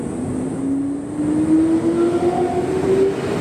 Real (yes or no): yes